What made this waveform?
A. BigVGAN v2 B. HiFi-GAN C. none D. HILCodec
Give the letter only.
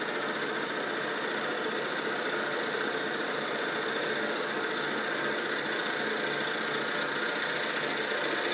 C